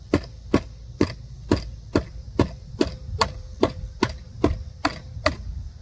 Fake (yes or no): no